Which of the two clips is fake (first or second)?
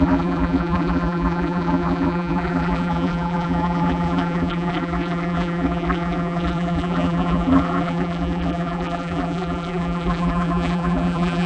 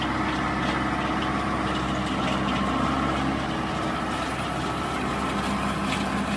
first